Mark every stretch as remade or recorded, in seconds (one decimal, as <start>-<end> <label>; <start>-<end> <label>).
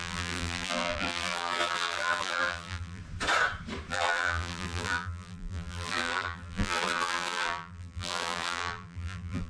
0.0-3.0 remade; 3.0-3.9 recorded; 3.9-9.5 remade